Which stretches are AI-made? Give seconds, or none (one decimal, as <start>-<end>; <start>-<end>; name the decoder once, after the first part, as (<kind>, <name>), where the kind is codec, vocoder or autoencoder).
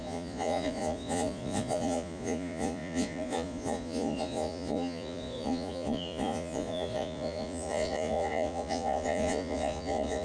0.0-10.2 (vocoder, Vocos)